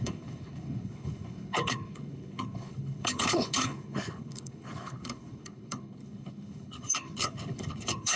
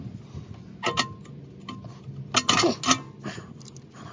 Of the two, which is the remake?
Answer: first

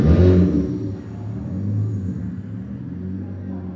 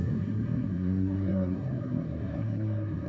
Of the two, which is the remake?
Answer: second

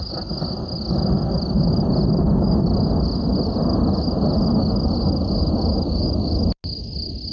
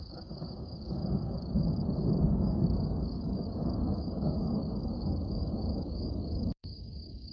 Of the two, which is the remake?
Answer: second